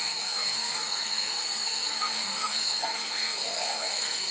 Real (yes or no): no